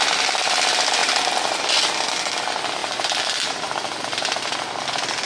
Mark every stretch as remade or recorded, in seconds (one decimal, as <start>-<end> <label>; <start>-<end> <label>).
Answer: 0.0-1.0 recorded; 1.0-1.6 remade; 1.6-5.3 recorded